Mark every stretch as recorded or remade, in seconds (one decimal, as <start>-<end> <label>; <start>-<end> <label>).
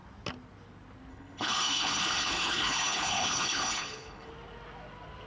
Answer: 0.0-1.1 recorded; 1.1-4.3 remade; 4.3-5.3 recorded